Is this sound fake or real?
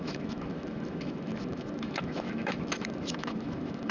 fake